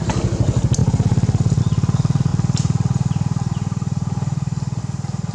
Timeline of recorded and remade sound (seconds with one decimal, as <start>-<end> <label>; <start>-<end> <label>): 0.0-5.3 recorded